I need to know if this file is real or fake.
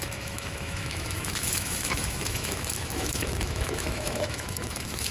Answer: fake